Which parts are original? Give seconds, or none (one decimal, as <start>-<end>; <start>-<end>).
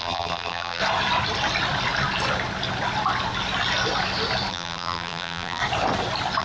0.8-4.5; 5.6-6.4